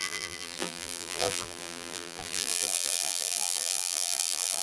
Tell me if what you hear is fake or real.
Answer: fake